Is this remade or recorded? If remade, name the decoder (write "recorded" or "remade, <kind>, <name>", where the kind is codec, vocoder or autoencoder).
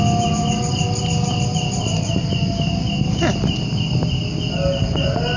recorded